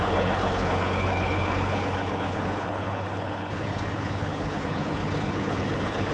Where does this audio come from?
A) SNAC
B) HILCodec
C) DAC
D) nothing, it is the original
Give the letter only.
B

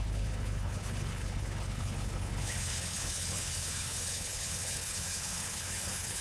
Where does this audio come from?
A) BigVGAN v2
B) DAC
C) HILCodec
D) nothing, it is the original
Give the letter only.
C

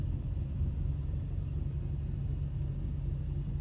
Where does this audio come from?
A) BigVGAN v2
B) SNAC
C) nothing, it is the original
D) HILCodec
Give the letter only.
C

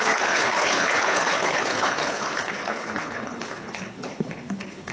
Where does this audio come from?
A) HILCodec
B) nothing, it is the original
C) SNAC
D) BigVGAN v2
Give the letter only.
A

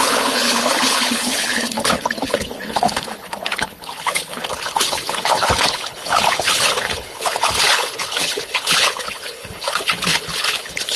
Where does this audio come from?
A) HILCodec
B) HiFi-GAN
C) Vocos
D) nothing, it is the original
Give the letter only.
A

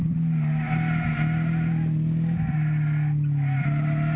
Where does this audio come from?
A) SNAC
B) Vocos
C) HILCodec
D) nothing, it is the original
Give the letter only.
D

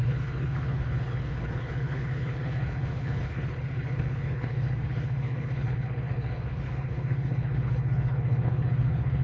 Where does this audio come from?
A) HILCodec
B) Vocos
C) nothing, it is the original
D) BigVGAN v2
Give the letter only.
A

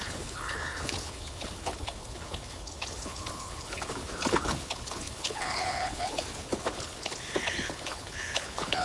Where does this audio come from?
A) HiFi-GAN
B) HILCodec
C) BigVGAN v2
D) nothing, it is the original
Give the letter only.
B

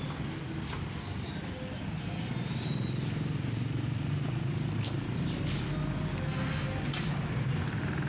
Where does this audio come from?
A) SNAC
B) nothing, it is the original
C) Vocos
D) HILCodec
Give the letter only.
B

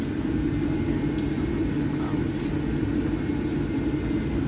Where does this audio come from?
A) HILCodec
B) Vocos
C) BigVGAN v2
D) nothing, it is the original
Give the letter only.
D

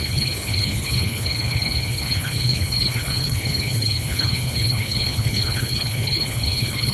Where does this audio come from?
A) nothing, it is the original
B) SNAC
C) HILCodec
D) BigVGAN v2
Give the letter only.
C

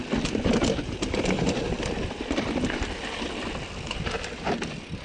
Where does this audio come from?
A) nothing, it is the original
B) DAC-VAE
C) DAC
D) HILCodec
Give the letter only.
A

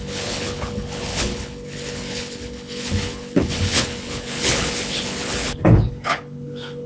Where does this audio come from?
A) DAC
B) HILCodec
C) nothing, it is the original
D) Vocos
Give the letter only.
B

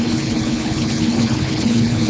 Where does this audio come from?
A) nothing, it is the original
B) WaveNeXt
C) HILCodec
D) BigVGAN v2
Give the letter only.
C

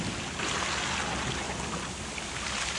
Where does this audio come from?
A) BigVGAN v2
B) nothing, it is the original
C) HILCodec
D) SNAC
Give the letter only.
B